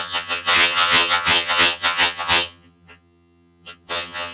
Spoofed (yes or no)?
yes